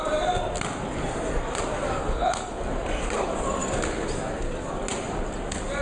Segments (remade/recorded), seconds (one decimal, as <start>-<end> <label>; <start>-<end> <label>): 0.0-2.0 recorded; 2.0-2.6 remade; 2.6-5.8 recorded